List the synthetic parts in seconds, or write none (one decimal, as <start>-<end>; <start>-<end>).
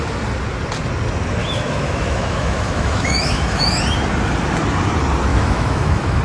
1.4-3.8; 5.3-6.2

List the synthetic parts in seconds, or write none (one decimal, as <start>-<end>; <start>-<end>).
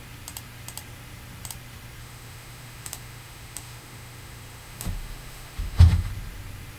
2.0-6.1